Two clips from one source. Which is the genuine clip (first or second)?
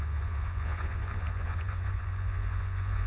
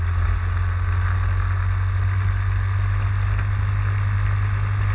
second